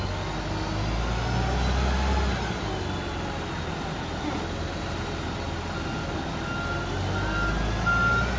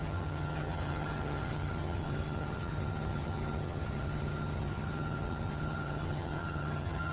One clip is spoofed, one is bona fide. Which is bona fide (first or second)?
first